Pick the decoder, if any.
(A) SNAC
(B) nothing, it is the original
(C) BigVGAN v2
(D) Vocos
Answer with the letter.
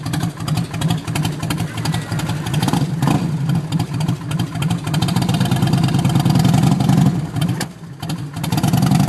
B